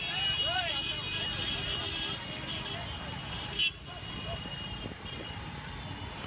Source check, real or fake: real